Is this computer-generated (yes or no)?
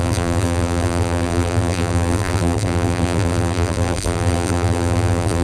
yes